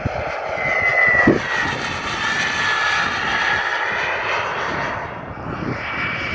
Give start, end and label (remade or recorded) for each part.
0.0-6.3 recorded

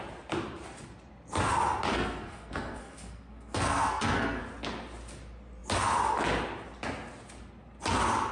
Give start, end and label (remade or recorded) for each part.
0.0-1.9 recorded; 1.9-4.4 remade; 4.4-8.3 recorded

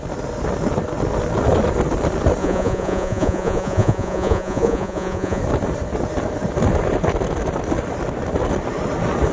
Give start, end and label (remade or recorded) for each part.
0.0-2.4 recorded; 2.4-5.4 remade; 5.4-9.3 recorded

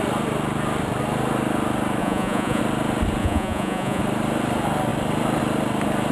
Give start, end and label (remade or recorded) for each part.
0.0-2.0 recorded; 2.0-2.6 remade; 2.6-3.2 recorded; 3.2-4.0 remade; 4.0-6.1 recorded

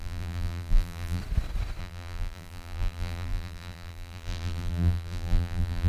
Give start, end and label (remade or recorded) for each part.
0.0-1.2 remade; 1.2-1.8 recorded; 1.8-5.9 remade